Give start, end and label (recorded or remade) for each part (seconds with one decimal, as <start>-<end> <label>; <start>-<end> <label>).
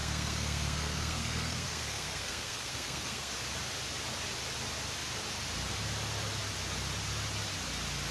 0.0-3.3 remade; 3.3-8.1 recorded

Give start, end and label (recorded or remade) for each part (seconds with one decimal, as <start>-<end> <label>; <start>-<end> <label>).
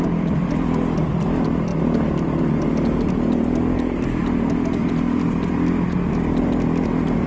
0.0-7.3 recorded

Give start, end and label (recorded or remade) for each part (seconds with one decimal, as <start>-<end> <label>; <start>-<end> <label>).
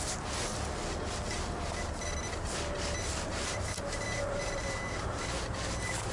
0.0-3.3 recorded; 3.3-6.1 remade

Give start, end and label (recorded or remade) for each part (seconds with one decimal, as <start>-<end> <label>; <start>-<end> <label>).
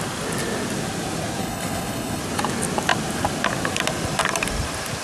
0.0-1.4 recorded; 1.4-2.2 remade; 2.2-5.0 recorded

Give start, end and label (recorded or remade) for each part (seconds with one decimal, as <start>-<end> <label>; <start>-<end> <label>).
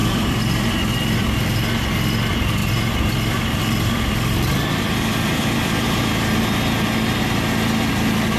0.0-1.2 remade; 1.2-2.6 recorded; 2.6-6.4 remade; 6.4-8.4 recorded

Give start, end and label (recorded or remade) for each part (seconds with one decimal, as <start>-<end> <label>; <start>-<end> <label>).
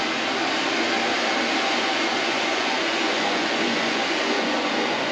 0.0-1.6 recorded; 1.6-5.1 remade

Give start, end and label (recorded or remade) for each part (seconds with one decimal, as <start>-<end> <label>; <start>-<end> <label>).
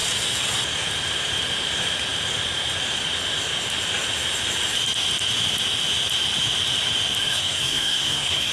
0.0-7.2 recorded; 7.2-8.5 remade